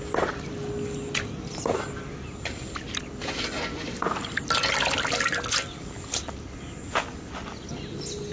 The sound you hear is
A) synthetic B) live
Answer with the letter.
B